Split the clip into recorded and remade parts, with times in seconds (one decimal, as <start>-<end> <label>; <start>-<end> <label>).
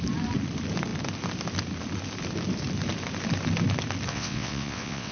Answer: 0.0-4.1 recorded; 4.1-5.1 remade